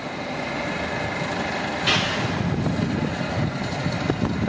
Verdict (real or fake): real